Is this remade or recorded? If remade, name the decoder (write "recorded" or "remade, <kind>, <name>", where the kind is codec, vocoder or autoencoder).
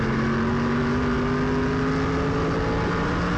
recorded